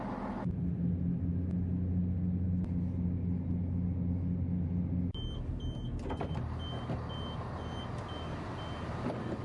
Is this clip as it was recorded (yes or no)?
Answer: yes